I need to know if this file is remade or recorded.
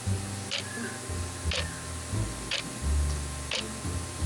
recorded